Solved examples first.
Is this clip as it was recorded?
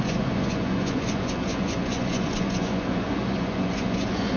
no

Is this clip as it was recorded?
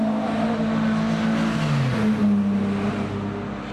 yes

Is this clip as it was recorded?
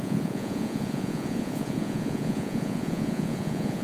no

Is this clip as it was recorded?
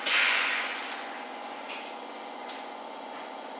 no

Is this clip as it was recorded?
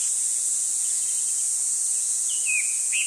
no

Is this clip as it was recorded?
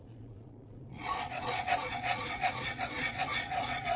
no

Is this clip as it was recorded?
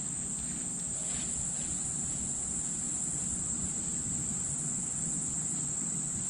yes